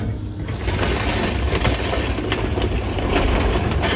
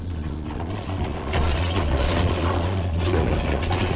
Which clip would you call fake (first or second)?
second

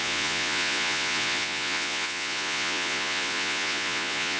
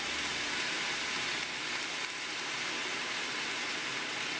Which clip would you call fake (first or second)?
first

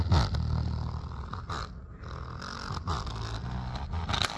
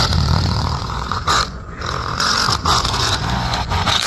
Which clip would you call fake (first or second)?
second